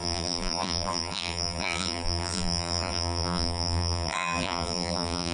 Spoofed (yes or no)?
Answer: yes